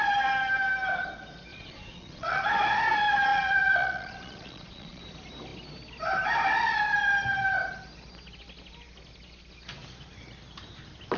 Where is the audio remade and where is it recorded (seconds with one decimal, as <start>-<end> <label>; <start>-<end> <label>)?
0.0-1.5 recorded; 1.5-2.4 remade; 2.4-3.3 recorded; 3.3-5.0 remade; 5.0-11.2 recorded